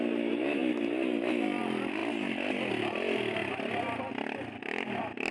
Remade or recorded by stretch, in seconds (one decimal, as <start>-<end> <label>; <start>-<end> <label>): 0.0-5.3 recorded